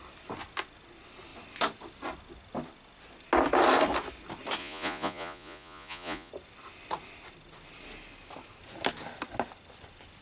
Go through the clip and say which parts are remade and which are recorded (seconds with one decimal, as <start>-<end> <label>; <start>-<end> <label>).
0.0-4.6 recorded; 4.6-6.3 remade; 6.3-10.2 recorded

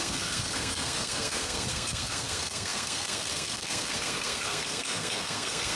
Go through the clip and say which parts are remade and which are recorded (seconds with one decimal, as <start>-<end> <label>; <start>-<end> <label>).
0.0-5.8 remade